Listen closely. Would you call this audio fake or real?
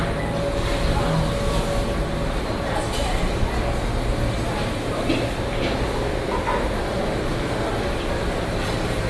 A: real